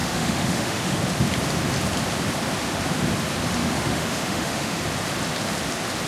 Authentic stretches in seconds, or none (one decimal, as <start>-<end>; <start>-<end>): 1.0-3.6; 4.8-6.1